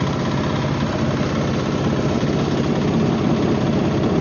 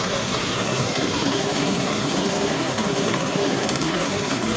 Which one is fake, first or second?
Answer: second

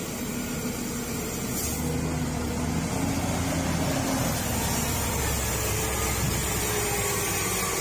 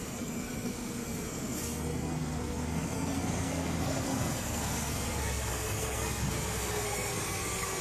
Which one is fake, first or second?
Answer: second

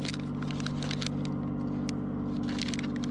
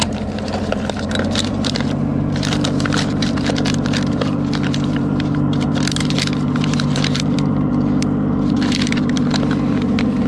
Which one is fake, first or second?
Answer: second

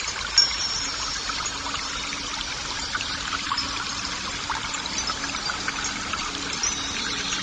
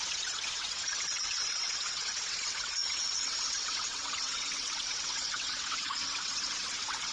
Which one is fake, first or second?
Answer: second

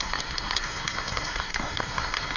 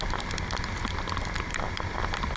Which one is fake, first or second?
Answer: first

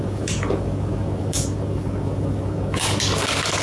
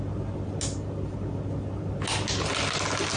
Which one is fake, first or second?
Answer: first